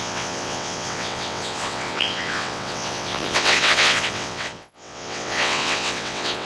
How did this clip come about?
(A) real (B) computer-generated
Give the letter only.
B